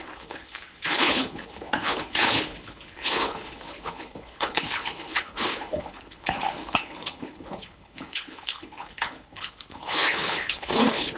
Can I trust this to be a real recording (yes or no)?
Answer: no